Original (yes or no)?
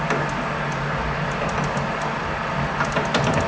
yes